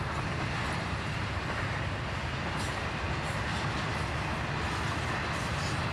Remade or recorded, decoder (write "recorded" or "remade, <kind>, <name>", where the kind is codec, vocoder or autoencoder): recorded